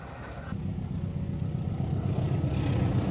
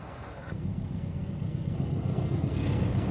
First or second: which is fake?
second